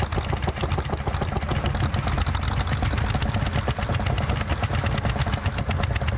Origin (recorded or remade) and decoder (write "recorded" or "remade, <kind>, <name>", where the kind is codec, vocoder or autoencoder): recorded